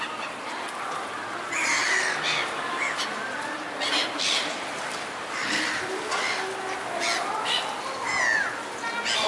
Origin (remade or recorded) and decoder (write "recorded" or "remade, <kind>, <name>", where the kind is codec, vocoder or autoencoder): recorded